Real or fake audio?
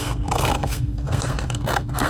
fake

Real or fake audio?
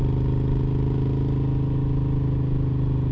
real